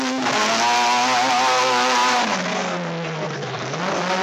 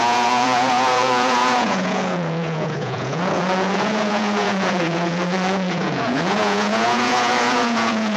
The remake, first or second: second